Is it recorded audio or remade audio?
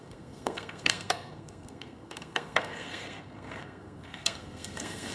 remade